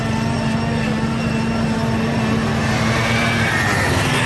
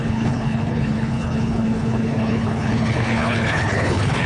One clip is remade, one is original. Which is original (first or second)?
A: first